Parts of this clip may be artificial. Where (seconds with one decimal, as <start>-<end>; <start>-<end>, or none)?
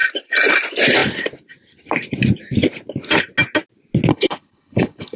4.1-5.2